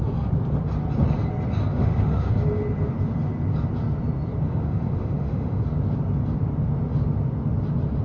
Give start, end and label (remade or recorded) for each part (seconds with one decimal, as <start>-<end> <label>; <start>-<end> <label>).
0.0-1.7 recorded; 1.7-2.3 remade; 2.3-4.5 recorded; 4.5-5.6 remade; 5.6-8.0 recorded